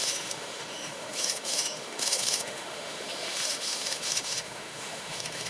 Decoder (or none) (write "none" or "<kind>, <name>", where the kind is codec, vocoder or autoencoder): autoencoder, DAC-VAE